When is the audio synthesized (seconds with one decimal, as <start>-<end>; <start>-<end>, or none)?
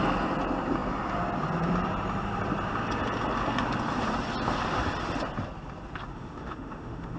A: 6.1-7.2